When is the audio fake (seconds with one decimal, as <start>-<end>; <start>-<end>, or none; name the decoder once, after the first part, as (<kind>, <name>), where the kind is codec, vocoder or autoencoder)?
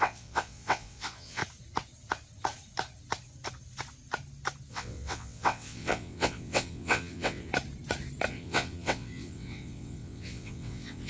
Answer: 0.0-1.4 (vocoder, WaveNeXt); 4.7-7.5; 8.3-11.1